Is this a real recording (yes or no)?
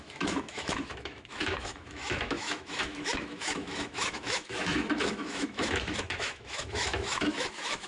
no